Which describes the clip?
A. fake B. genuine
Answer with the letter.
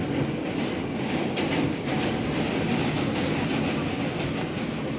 B